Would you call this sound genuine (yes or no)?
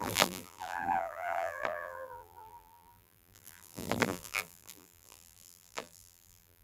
no